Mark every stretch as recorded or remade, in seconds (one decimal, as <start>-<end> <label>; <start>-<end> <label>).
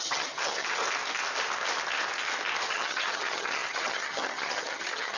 0.0-0.8 remade; 0.8-2.7 recorded; 2.7-5.2 remade